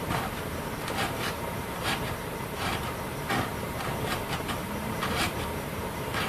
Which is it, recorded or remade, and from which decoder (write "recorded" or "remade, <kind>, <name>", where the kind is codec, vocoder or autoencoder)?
remade, vocoder, BigVGAN v2